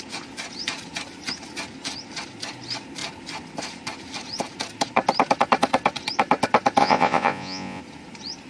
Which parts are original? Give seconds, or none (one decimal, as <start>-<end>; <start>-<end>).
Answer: 0.0-6.8; 7.8-8.5